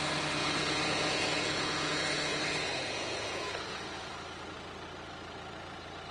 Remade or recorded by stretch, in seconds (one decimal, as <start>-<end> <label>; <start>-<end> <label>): 0.0-0.4 recorded; 0.4-4.1 remade; 4.1-6.1 recorded